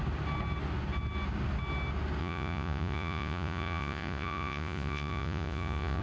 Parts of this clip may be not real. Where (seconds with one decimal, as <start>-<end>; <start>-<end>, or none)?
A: 2.2-6.0